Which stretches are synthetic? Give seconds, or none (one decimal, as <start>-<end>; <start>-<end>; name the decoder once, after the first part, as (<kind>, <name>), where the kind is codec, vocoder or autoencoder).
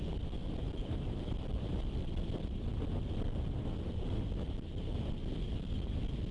none